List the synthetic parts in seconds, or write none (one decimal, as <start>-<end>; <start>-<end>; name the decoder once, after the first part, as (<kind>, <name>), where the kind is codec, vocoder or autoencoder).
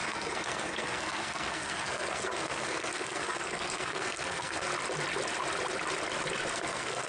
0.0-4.7 (codec, SNAC); 6.5-7.1